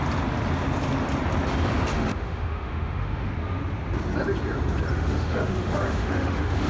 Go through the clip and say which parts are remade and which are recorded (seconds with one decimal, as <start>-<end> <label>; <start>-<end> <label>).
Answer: 0.0-1.9 recorded; 1.9-3.3 remade; 3.3-4.9 recorded; 4.9-6.7 remade